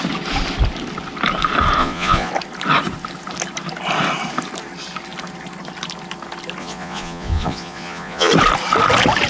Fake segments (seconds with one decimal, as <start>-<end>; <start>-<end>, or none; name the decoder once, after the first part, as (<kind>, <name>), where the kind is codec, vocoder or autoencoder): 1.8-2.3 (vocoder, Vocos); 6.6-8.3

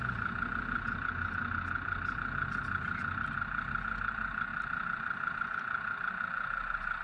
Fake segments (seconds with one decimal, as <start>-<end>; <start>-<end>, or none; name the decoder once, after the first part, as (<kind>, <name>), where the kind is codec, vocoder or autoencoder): none

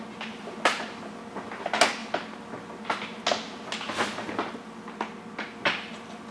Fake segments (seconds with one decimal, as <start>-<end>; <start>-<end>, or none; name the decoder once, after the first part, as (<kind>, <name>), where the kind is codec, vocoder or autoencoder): none